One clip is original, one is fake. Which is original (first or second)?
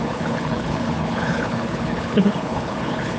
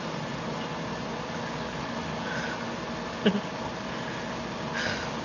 second